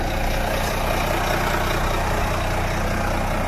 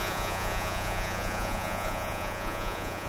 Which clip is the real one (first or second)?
first